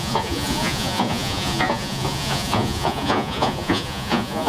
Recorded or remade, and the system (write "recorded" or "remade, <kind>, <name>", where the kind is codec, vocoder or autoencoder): remade, vocoder, Vocos